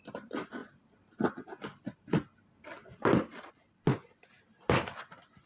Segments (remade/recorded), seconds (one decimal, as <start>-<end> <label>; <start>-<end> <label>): 0.0-5.5 recorded